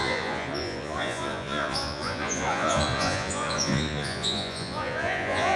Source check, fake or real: fake